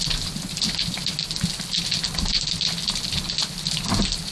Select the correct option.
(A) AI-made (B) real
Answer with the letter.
B